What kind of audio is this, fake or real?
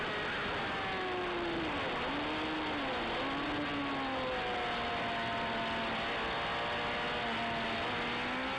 real